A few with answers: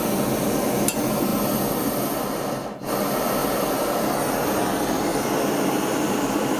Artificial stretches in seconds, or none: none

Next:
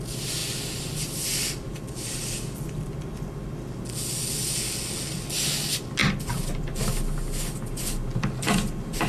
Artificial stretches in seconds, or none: none